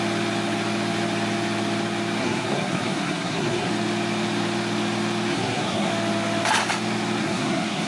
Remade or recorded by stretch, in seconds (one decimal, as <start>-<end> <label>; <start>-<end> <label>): 0.0-2.2 recorded; 2.2-3.7 remade; 3.7-5.3 recorded; 5.3-5.9 remade; 5.9-7.2 recorded; 7.2-7.9 remade